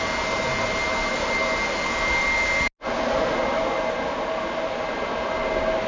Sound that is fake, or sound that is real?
real